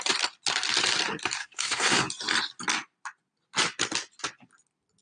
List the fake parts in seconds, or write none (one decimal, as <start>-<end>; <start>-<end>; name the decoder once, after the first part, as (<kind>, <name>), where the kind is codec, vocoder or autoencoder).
1.4-2.0 (codec, SNAC)

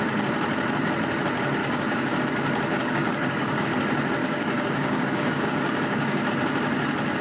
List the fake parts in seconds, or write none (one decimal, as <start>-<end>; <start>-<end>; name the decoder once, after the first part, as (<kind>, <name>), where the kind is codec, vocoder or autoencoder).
1.6-2.2 (codec, DAC); 2.7-3.7; 4.2-6.3